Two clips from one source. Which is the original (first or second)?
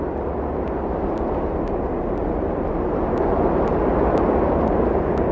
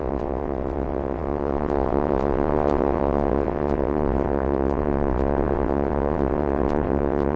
first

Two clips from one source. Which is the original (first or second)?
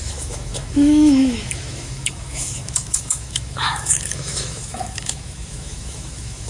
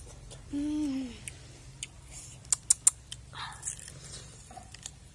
second